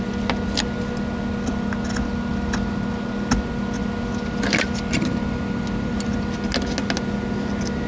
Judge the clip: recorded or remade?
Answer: recorded